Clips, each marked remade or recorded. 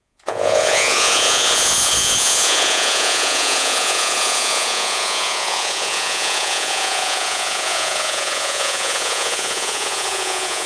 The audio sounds remade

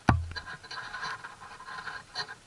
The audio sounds recorded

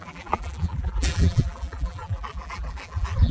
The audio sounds remade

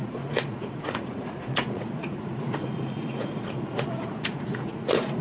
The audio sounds remade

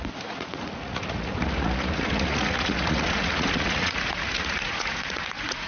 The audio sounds remade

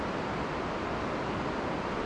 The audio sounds recorded